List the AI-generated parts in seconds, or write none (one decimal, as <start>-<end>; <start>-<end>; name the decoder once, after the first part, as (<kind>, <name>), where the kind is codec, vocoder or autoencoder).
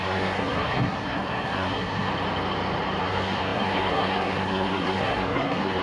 0.0-2.1 (codec, SNAC); 3.0-5.8